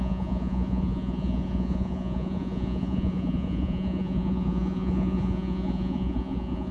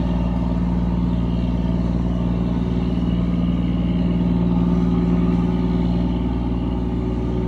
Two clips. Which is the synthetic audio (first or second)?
first